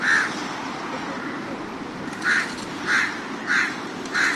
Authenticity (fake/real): real